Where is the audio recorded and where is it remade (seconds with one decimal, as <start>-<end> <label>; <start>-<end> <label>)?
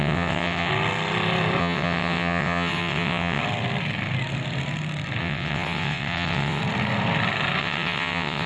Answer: 0.0-0.7 remade; 0.7-1.6 recorded; 1.6-3.4 remade; 3.4-5.2 recorded; 5.2-6.6 remade; 6.6-7.6 recorded; 7.6-8.5 remade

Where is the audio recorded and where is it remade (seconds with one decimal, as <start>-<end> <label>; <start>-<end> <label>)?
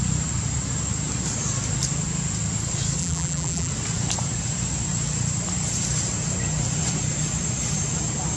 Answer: 0.0-3.0 recorded; 3.0-3.7 remade; 3.7-8.4 recorded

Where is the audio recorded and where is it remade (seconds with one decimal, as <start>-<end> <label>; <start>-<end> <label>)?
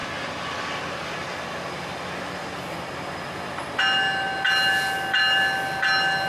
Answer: 0.0-6.3 recorded